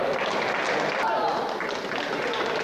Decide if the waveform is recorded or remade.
remade